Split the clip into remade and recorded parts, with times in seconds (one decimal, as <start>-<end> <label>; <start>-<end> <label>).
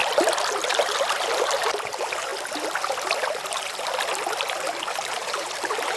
0.0-1.7 recorded; 1.7-2.3 remade; 2.3-4.9 recorded; 4.9-6.0 remade